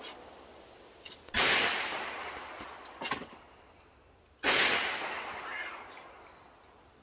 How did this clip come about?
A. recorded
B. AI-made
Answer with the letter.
A